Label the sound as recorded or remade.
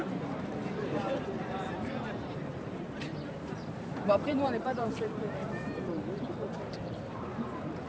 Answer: remade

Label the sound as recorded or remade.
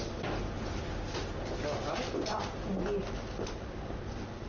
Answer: recorded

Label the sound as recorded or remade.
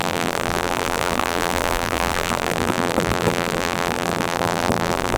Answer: remade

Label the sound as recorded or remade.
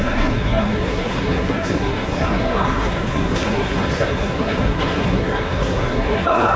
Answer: remade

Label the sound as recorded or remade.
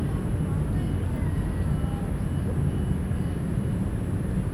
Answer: recorded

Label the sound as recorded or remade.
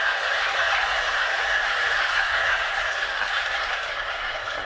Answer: remade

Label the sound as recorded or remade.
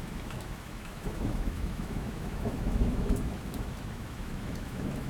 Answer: remade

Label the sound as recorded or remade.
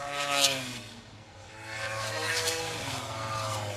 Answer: remade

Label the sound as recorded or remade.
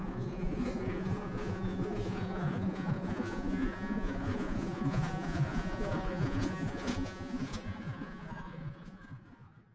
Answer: remade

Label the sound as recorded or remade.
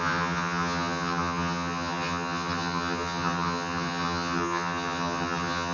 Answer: remade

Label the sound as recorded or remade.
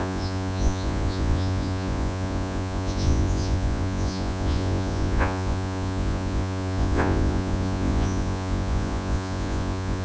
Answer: remade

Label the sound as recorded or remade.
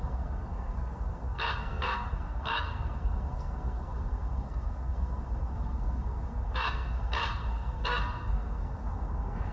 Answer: remade